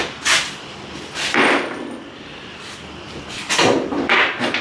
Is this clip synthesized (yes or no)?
no